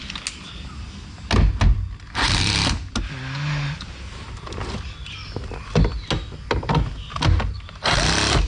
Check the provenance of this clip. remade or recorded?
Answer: recorded